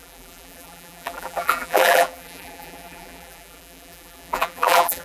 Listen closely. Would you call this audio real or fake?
fake